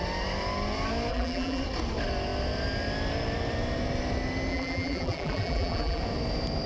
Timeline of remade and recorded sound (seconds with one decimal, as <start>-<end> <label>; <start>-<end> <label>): 0.0-1.1 recorded; 1.1-1.6 remade; 1.6-4.5 recorded; 4.5-6.0 remade; 6.0-6.7 recorded